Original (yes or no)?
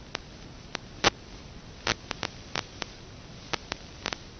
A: yes